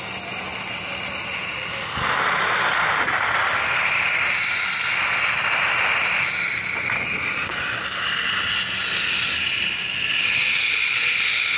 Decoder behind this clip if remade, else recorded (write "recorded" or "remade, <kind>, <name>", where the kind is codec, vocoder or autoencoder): recorded